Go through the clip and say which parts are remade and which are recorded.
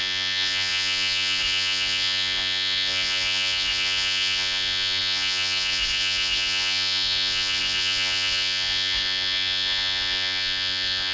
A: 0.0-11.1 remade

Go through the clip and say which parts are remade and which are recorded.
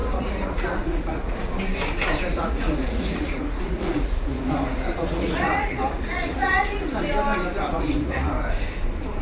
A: 0.0-1.6 remade; 1.6-2.3 recorded; 2.3-7.0 remade; 7.0-7.7 recorded; 7.7-8.3 remade; 8.3-9.2 recorded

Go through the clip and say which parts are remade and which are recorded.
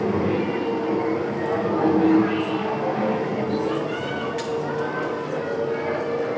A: 0.0-6.4 recorded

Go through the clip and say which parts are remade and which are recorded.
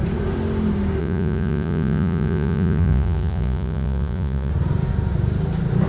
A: 0.0-1.0 recorded; 1.0-4.5 remade; 4.5-5.9 recorded